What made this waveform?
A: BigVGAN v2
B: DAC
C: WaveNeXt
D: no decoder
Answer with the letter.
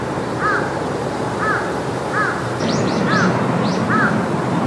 A